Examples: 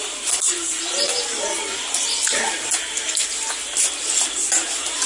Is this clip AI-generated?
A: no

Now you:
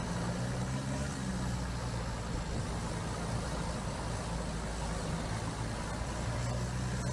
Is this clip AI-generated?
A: no